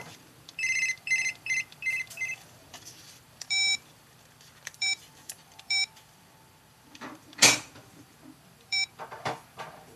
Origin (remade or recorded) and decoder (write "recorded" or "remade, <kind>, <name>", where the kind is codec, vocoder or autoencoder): remade, vocoder, BigVGAN v2